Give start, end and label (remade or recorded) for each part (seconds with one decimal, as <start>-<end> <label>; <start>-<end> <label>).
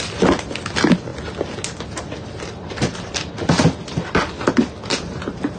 0.0-5.6 recorded